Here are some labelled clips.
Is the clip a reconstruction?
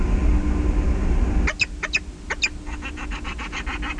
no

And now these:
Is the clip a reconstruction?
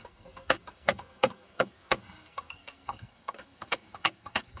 yes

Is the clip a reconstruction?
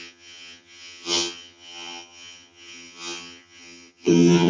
yes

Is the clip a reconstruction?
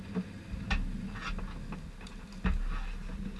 no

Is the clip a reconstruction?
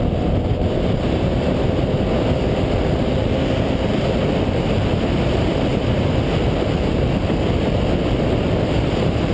no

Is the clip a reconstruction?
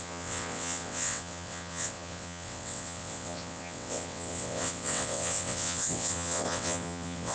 yes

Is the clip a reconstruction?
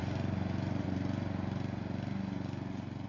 no